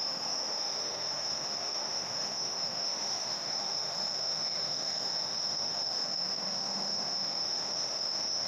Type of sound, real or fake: fake